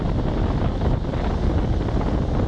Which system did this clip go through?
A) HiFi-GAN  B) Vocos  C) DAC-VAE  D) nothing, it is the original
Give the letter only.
D